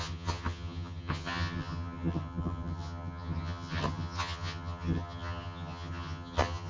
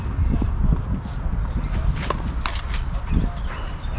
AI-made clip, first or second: first